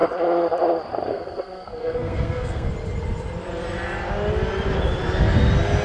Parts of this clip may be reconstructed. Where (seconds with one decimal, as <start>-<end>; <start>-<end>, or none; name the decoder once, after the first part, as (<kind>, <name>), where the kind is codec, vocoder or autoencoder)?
1.1-2.7 (codec, SNAC)